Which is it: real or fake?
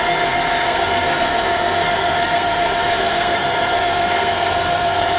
fake